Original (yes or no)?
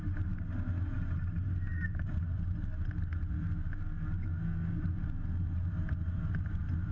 yes